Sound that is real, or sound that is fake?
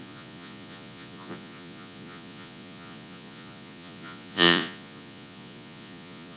fake